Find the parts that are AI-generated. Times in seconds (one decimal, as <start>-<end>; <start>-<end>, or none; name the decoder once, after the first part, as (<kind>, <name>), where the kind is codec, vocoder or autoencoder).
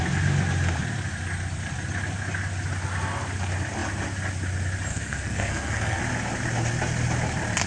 4.9-6.0 (codec, SNAC)